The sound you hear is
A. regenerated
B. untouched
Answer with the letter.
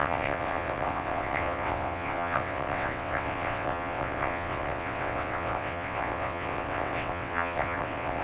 A